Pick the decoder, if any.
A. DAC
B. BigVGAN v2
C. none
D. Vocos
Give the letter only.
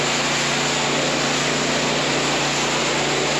C